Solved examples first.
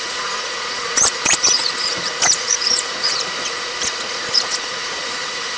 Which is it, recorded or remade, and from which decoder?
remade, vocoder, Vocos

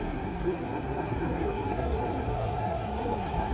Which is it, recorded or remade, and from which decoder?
remade, codec, SNAC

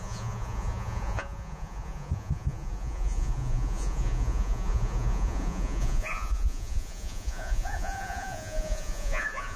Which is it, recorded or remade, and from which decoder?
remade, vocoder, Vocos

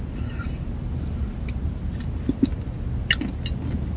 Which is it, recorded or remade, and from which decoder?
recorded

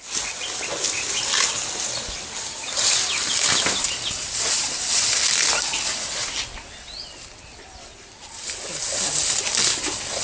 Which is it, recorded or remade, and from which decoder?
recorded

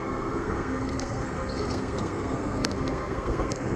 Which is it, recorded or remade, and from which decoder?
remade, codec, SNAC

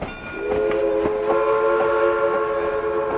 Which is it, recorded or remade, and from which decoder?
recorded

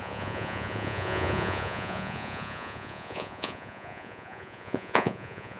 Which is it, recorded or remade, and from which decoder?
remade, vocoder, Vocos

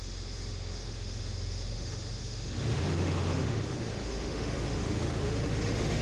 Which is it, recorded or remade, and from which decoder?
remade, autoencoder, DAC-VAE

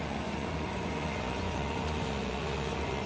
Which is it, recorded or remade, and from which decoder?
remade, vocoder, Vocos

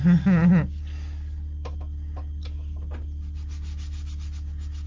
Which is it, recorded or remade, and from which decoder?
recorded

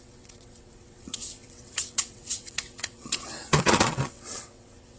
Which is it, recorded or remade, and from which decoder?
remade, vocoder, WaveNeXt